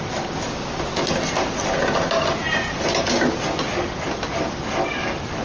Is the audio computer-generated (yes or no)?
no